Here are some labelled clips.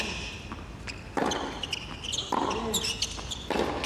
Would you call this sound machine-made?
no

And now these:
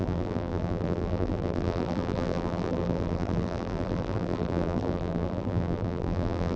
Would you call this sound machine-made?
yes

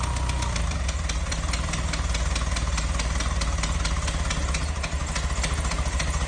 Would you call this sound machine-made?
no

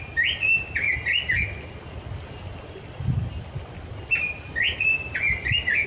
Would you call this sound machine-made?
no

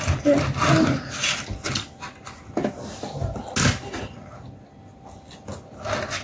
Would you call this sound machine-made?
no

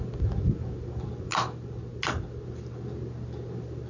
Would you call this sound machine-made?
no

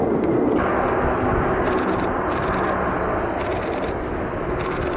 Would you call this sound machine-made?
no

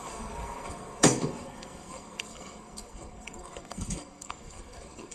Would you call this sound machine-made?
yes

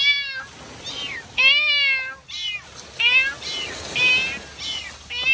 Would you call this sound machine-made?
no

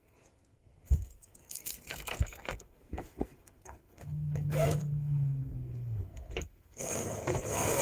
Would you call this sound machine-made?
yes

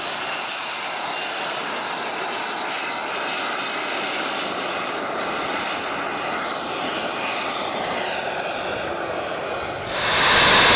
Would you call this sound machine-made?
no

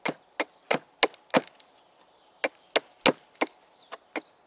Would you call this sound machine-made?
no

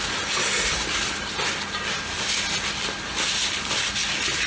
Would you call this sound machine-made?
no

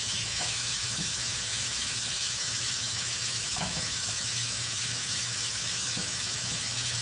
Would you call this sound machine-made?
yes